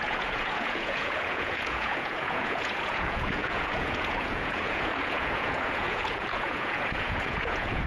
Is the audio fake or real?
fake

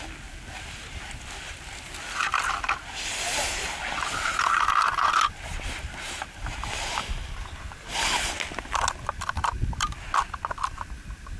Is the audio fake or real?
real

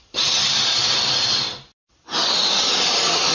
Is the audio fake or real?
real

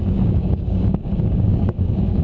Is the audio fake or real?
fake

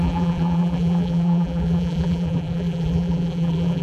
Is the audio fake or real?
fake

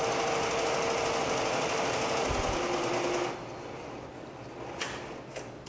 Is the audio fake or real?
real